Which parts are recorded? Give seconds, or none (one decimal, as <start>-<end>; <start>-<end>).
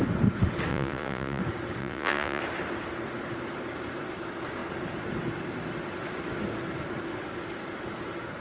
0.0-0.7; 1.4-1.8; 2.4-8.4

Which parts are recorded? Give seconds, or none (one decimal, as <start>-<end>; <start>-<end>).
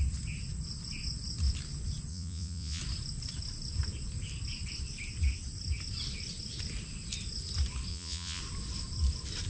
0.0-2.1; 2.8-7.9; 8.4-9.5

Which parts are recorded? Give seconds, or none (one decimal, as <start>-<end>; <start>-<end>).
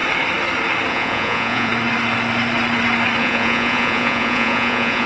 0.0-0.9; 1.7-3.2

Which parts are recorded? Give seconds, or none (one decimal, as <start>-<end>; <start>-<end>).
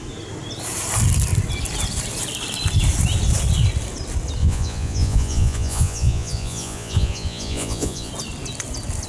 0.0-4.4; 8.1-9.1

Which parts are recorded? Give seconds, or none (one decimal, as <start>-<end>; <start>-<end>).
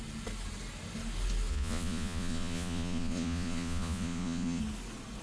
0.0-1.5; 4.6-5.2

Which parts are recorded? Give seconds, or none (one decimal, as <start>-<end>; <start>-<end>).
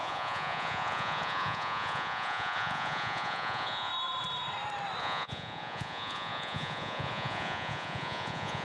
3.9-5.0